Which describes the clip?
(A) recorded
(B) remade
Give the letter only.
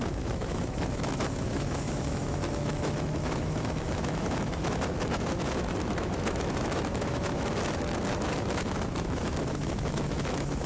B